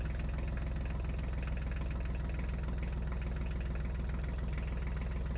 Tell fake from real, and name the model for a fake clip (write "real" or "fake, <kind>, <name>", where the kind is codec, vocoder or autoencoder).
real